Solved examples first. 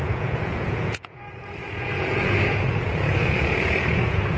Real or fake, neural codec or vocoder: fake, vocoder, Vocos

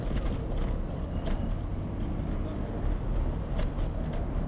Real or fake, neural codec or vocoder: real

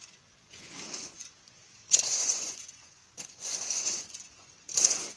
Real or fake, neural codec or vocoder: fake, vocoder, Vocos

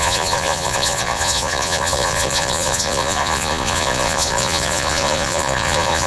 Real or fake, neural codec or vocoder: fake, vocoder, Vocos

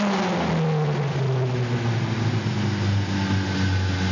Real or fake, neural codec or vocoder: real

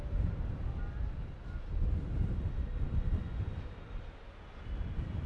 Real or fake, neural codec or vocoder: real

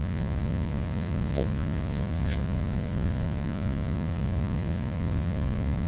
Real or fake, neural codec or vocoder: fake, vocoder, Vocos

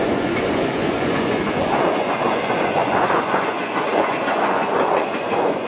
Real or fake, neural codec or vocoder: fake, vocoder, Vocos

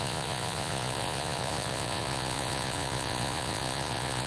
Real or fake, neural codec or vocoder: fake, vocoder, Vocos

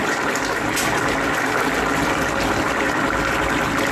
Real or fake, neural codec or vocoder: real